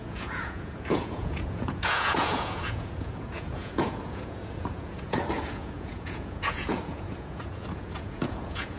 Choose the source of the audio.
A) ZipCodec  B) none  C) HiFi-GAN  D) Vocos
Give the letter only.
D